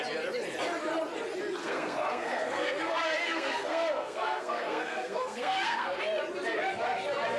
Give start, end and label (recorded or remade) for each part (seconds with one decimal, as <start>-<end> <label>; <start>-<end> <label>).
0.0-1.6 recorded; 1.6-6.0 remade; 6.0-7.4 recorded